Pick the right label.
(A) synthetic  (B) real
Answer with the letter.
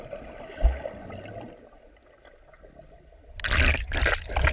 B